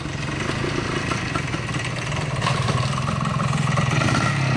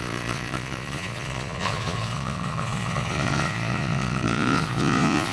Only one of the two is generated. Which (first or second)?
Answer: second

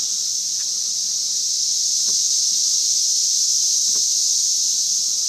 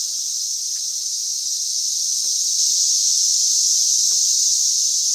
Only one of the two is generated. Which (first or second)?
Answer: second